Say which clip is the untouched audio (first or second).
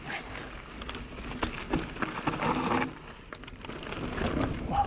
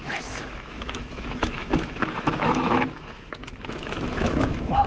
first